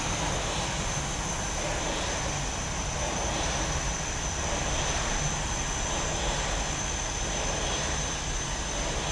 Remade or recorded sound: recorded